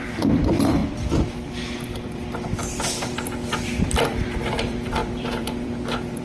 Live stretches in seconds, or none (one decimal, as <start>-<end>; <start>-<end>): 0.8-1.5; 2.6-3.1

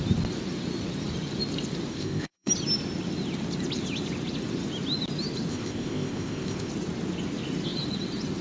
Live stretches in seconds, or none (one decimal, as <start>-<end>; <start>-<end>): 0.0-1.9; 2.5-5.5; 6.7-8.4

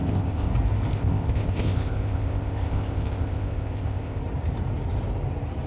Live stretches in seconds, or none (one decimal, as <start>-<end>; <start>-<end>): 0.5-0.9; 4.2-5.7

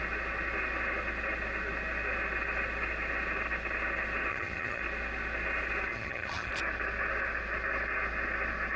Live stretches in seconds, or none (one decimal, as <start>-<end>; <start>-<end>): 0.0-4.3; 4.8-5.9; 6.5-8.8